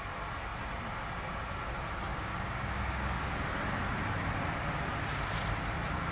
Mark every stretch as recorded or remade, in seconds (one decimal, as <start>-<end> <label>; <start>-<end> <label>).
0.0-2.1 recorded; 2.1-3.4 remade; 3.4-6.1 recorded